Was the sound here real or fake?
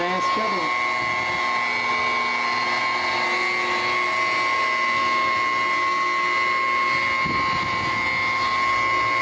real